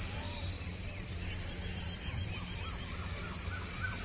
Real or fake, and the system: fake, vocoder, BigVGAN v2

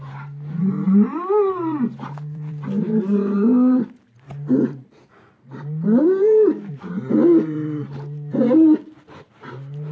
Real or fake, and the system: fake, vocoder, BigVGAN v2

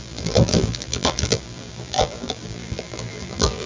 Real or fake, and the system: fake, vocoder, BigVGAN v2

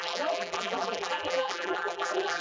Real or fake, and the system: fake, vocoder, BigVGAN v2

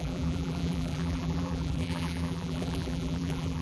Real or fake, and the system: fake, vocoder, BigVGAN v2